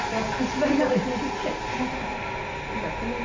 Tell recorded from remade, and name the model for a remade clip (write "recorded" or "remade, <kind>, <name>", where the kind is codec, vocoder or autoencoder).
recorded